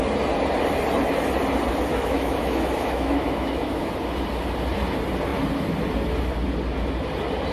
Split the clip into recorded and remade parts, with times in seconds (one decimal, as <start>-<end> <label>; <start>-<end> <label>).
0.0-1.9 recorded; 1.9-3.9 remade; 3.9-7.5 recorded